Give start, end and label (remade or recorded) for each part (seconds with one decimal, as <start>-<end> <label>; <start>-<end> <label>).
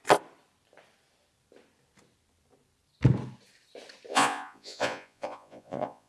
0.0-4.1 recorded; 4.1-6.1 remade